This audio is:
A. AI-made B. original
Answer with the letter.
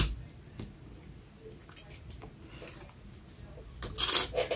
B